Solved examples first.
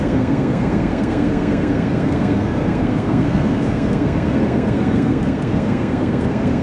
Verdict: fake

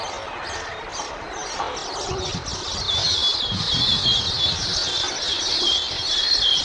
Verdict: real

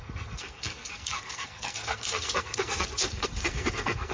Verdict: fake